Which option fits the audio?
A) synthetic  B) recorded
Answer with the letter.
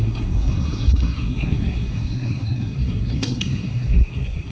A